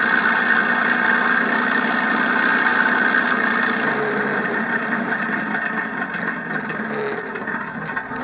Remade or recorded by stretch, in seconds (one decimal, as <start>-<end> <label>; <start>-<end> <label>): 0.0-8.2 recorded

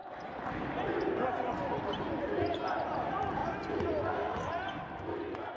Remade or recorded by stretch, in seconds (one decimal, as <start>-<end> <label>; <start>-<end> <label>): 0.0-5.6 recorded

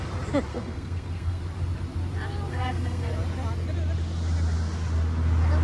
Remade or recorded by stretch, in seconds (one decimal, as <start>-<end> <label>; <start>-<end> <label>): 0.0-0.5 recorded; 0.5-1.4 remade; 1.4-2.5 recorded; 2.5-3.1 remade; 3.1-5.6 recorded

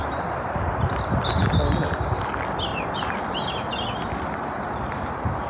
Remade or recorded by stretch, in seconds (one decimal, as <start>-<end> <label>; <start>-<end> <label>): 0.0-5.5 recorded

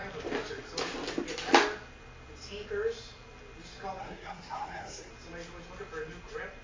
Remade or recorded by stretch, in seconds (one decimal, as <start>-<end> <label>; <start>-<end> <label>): 0.0-4.0 recorded; 4.0-5.1 remade; 5.1-6.6 recorded